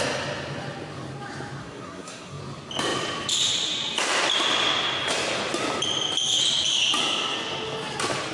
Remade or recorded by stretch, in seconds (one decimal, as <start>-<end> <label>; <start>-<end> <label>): 0.0-1.6 recorded; 1.6-2.4 remade; 2.4-8.3 recorded